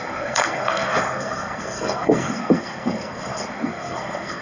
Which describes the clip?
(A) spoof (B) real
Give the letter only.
A